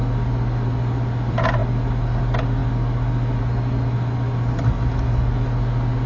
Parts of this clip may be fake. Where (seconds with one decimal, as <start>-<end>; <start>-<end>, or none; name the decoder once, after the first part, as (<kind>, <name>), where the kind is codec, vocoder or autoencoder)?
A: none